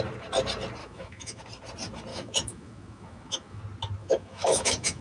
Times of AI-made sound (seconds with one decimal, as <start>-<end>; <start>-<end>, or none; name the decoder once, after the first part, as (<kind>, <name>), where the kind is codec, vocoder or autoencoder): 0.8-1.4 (autoencoder, DAC-VAE); 2.1-3.6; 4.0-5.0